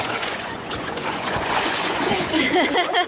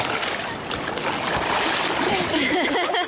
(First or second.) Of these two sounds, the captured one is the second